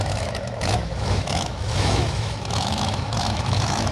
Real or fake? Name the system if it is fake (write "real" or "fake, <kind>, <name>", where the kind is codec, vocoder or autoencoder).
fake, autoencoder, DAC-VAE